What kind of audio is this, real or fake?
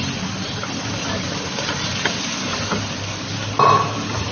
real